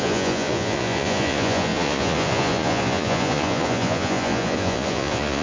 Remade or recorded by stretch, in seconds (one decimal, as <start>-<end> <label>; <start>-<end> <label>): 0.0-5.4 remade